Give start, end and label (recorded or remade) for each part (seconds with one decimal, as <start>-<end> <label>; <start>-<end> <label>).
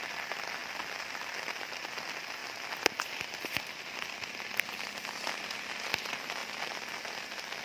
0.0-7.6 recorded